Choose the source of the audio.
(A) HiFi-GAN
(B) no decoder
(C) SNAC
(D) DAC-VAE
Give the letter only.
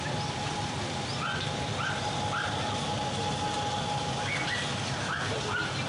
B